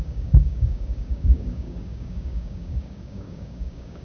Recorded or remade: remade